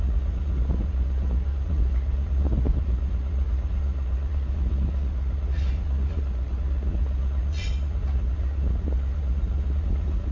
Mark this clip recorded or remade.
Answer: remade